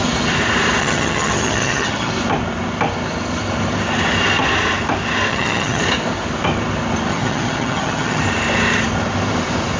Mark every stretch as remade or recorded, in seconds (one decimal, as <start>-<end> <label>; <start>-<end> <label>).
0.0-0.8 recorded; 0.8-2.1 remade; 2.1-5.3 recorded; 5.3-5.8 remade; 5.8-7.1 recorded; 7.1-8.2 remade; 8.2-9.8 recorded